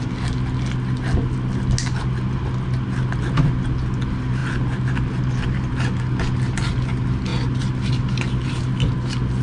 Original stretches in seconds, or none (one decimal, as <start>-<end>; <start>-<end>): 0.0-9.4